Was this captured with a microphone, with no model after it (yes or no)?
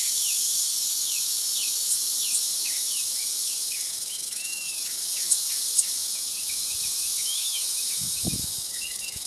no